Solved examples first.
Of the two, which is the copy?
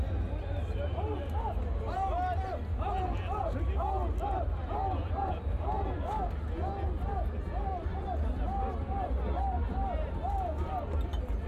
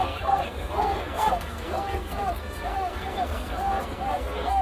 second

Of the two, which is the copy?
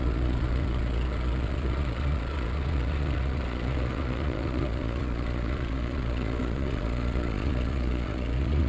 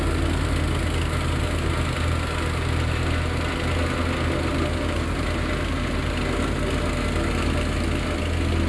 first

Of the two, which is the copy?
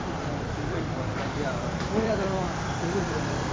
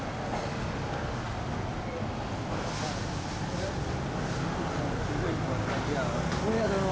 first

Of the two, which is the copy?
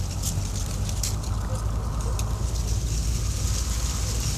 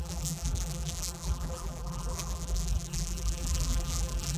second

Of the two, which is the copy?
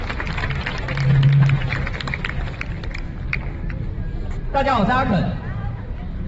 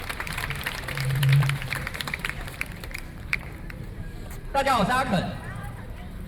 second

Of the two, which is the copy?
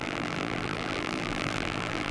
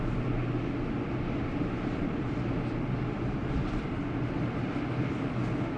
first